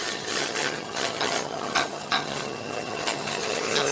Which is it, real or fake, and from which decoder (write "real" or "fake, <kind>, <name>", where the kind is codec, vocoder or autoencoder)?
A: fake, vocoder, HiFi-GAN